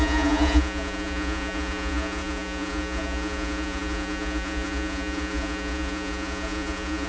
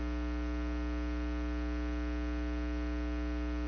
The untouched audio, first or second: second